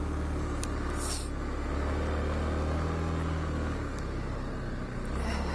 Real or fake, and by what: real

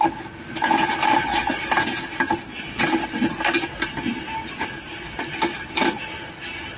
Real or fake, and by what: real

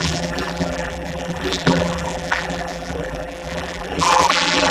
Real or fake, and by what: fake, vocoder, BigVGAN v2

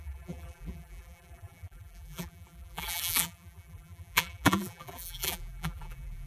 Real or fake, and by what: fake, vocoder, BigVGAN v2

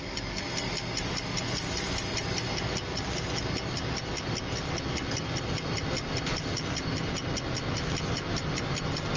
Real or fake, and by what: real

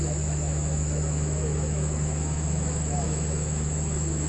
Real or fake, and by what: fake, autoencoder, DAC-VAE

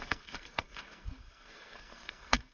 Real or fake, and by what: fake, codec, SNAC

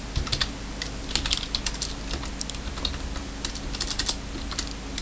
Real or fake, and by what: real